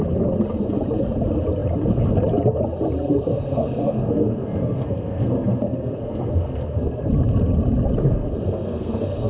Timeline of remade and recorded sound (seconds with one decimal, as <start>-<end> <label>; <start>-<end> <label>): 0.0-3.3 recorded; 3.3-7.1 remade; 7.1-8.0 recorded; 8.0-9.3 remade